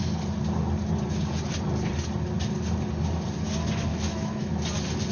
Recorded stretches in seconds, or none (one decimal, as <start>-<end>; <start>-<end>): 0.0-3.9; 4.5-5.1